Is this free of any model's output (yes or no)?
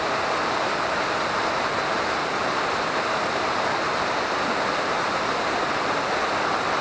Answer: yes